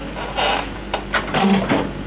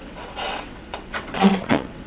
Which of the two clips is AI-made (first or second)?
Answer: second